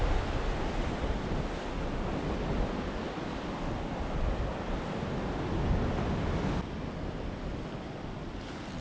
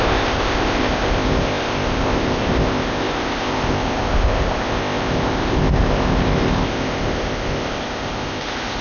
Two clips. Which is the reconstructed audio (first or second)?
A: second